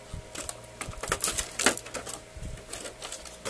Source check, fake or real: real